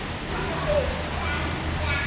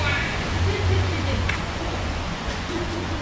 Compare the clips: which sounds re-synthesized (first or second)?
second